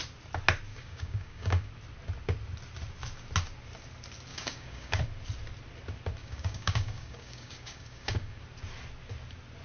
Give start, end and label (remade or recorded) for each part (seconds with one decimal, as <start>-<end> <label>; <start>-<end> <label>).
0.0-0.7 recorded; 0.7-1.7 remade; 1.7-4.3 recorded; 4.3-5.0 remade; 5.0-6.2 recorded; 6.2-8.4 remade; 8.4-9.6 recorded